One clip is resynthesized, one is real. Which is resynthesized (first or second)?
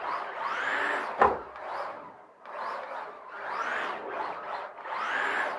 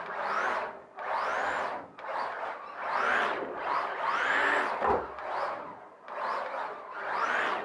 first